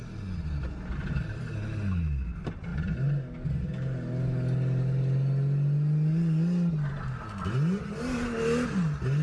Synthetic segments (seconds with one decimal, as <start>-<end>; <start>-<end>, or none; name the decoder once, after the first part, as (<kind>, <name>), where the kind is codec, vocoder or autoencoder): none